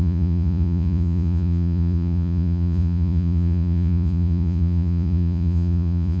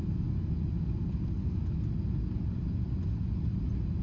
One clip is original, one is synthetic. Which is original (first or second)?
second